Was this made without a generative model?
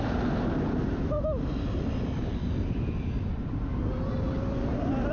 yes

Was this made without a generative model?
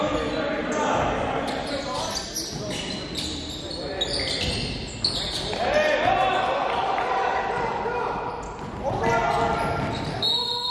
yes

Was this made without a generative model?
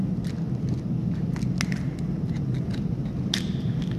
yes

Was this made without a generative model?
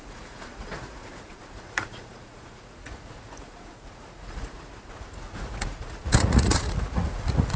no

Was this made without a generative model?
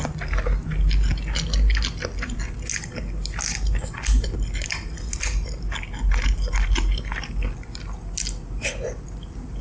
yes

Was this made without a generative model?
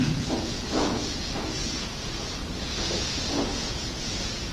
no